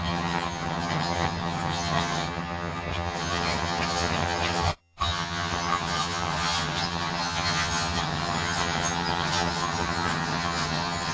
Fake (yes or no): yes